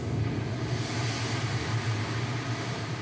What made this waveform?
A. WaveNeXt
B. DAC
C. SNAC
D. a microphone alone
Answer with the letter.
D